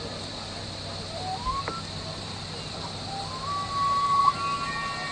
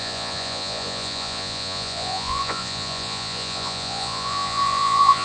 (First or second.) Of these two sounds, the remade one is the second